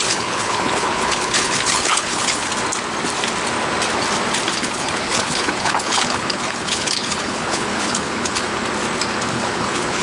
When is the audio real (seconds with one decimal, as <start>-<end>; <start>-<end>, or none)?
2.5-4.6; 8.5-9.3